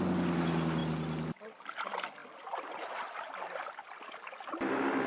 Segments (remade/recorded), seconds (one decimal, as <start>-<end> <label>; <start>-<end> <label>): 0.0-2.2 recorded; 2.2-4.3 remade; 4.3-5.1 recorded